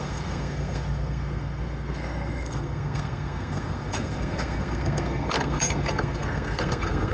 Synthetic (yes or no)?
yes